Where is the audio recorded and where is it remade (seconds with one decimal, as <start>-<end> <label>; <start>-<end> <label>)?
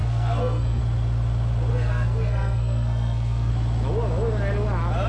0.0-0.8 remade; 0.8-1.7 recorded; 1.7-3.5 remade; 3.5-5.1 recorded